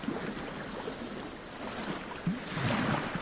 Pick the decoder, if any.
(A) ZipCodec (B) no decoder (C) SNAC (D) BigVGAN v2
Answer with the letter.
B